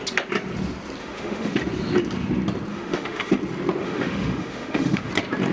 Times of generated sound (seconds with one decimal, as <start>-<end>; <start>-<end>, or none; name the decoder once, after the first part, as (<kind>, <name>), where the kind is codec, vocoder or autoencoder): 1.0-1.6 (autoencoder, DAC-VAE); 2.7-3.4; 3.8-5.1